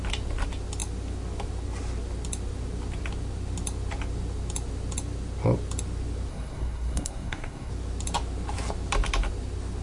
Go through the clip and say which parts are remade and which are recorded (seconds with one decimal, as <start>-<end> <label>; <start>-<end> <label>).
0.0-6.3 recorded; 6.3-7.7 remade; 7.7-9.8 recorded